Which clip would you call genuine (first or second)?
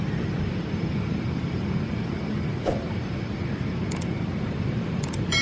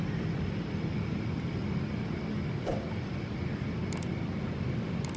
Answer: second